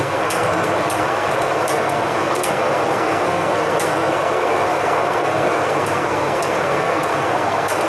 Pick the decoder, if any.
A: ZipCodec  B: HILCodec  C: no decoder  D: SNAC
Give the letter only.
D